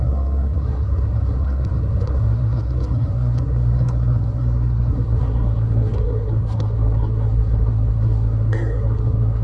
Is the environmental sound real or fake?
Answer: fake